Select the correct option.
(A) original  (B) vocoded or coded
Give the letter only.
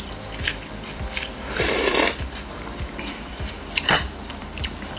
B